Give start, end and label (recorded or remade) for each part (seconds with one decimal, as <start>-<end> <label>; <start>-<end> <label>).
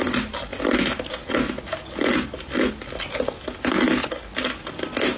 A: 0.0-5.2 recorded